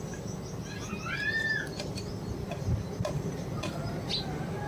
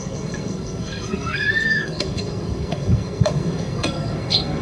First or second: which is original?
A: first